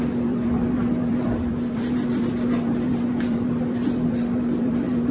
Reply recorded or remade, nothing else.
remade